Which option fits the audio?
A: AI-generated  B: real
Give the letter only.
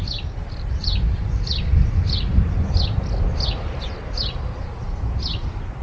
A